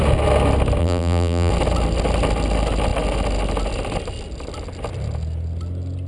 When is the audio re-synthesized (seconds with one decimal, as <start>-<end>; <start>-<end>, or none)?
0.8-1.5